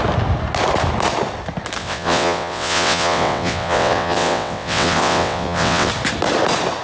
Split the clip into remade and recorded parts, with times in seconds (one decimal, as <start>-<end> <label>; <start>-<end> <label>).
0.0-1.8 recorded; 1.8-5.9 remade; 5.9-6.8 recorded